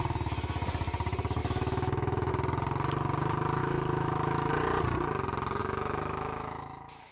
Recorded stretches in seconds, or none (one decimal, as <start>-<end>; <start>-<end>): 0.0-1.4; 2.3-3.6; 4.5-5.6